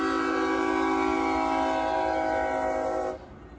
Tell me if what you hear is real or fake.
real